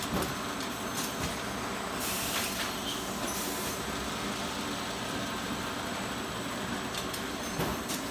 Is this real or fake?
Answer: real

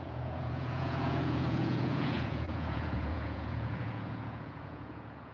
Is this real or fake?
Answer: fake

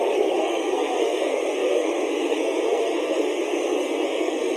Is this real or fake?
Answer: fake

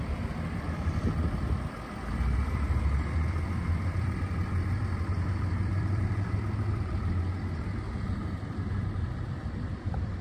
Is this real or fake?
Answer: fake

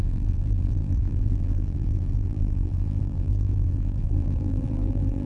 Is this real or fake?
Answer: fake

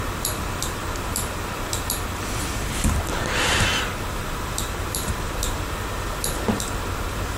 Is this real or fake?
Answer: real